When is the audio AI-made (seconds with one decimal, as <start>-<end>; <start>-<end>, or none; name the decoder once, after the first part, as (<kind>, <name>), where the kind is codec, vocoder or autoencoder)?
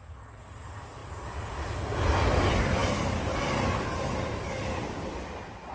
none